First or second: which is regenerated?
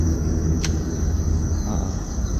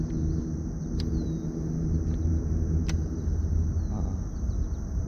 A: first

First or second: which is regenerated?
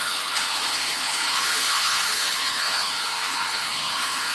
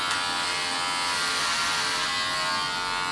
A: first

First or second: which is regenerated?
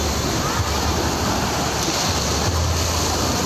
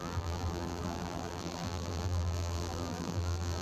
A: second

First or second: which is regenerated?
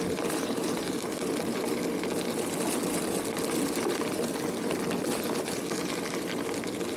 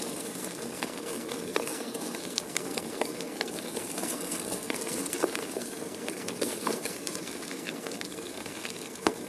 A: second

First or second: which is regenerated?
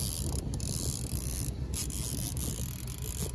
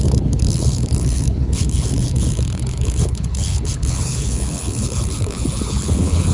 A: second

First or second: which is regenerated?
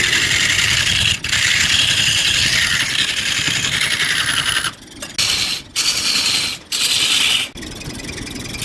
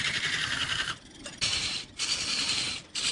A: second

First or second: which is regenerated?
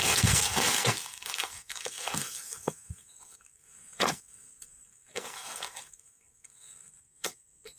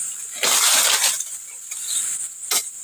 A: first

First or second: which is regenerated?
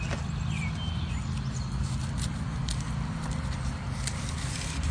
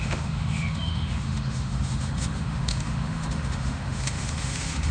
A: second